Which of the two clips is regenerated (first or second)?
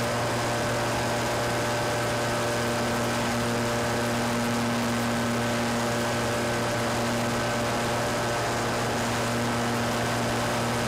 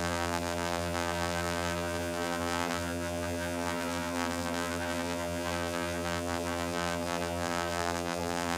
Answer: second